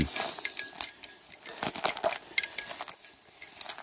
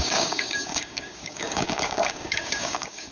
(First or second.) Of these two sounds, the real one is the first